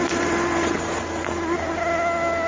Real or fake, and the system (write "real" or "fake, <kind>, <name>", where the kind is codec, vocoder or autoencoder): real